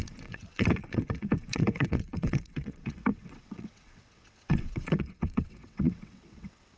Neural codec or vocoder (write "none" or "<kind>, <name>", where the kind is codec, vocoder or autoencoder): vocoder, WaveNeXt